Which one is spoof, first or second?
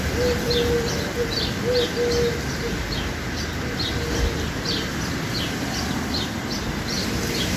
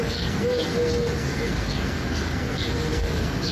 second